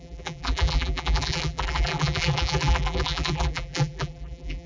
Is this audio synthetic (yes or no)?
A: yes